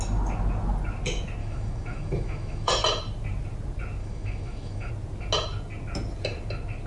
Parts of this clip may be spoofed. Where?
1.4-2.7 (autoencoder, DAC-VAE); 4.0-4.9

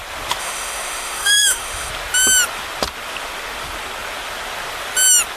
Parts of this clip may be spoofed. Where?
0.4-1.9 (autoencoder, DAC-VAE)

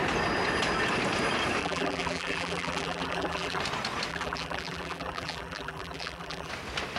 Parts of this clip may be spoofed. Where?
1.6-3.6 (vocoder, BigVGAN v2); 4.1-6.5

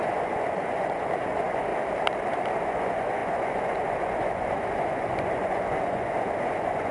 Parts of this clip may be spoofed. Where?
0.0-1.7 (vocoder, Vocos); 2.5-6.9

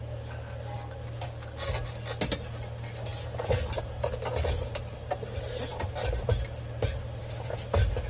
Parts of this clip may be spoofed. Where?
none

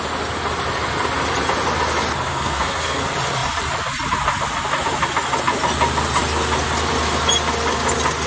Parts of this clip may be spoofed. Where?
2.3-3.0 (codec, SNAC)

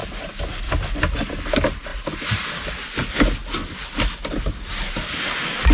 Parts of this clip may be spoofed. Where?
none